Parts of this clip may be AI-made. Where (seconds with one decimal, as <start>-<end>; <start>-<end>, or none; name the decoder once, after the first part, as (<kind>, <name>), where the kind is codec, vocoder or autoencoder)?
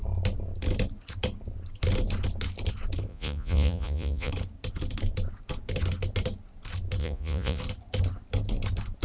3.1-4.3 (vocoder, Vocos); 7.0-7.6